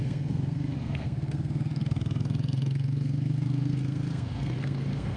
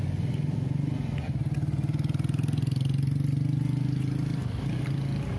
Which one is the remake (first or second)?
first